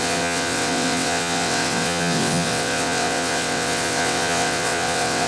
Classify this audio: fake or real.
fake